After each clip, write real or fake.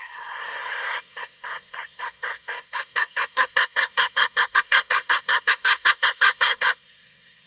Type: fake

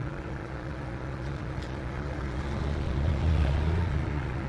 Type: fake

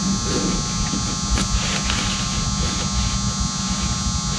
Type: real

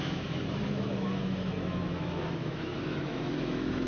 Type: fake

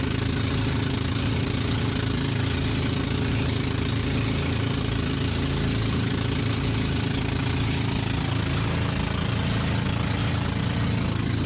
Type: real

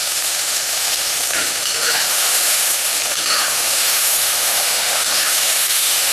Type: fake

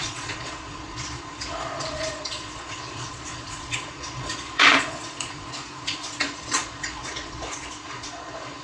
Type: fake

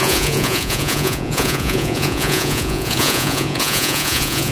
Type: fake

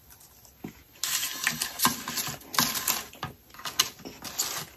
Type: real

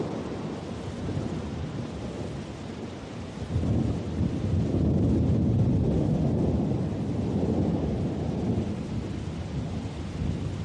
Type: real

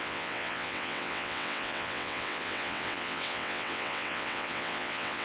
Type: fake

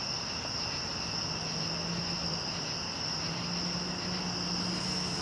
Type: real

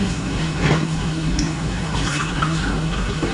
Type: fake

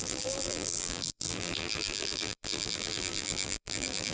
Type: fake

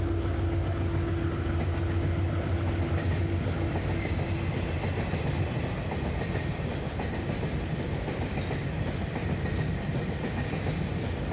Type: real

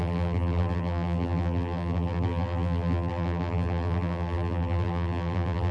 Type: fake